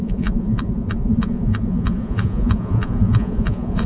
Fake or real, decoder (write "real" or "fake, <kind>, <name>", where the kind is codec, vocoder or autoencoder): fake, vocoder, Vocos